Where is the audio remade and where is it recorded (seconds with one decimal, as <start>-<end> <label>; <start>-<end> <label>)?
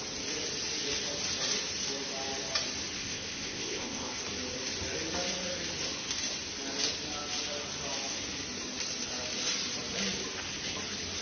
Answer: 0.0-3.0 recorded; 3.0-4.1 remade; 4.1-11.2 recorded